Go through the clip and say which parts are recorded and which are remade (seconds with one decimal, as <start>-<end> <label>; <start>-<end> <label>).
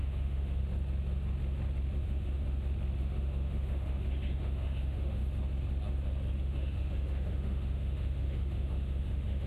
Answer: 0.0-0.6 remade; 0.6-2.0 recorded; 2.0-2.4 remade; 2.4-3.0 recorded; 3.0-5.2 remade; 5.2-6.4 recorded; 6.4-9.5 remade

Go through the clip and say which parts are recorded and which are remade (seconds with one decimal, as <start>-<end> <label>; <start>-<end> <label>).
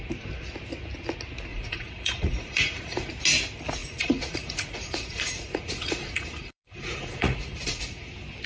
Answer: 0.0-1.5 recorded; 1.5-3.1 remade; 3.1-3.8 recorded; 3.8-8.1 remade; 8.1-8.5 recorded